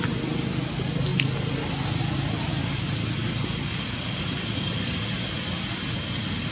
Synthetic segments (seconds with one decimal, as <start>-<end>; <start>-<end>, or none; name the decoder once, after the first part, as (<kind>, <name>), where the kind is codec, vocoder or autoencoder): none